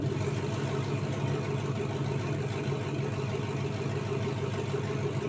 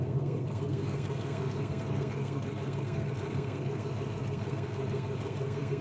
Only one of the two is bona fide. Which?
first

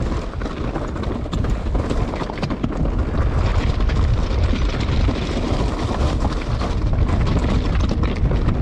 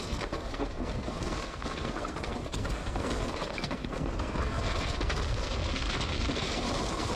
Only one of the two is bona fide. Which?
first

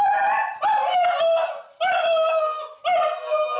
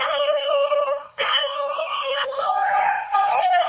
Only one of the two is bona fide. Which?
first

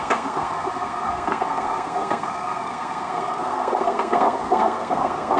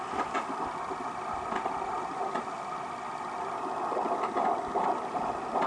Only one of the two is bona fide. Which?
second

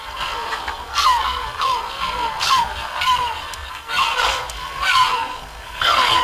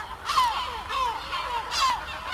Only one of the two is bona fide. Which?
second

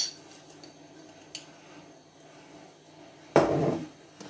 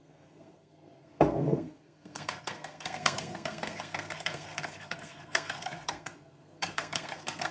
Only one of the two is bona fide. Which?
first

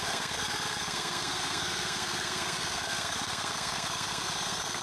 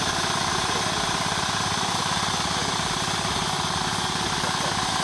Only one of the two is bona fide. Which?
second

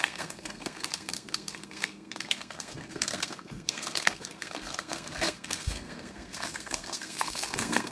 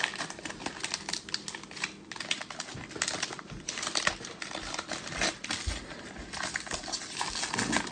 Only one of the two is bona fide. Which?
second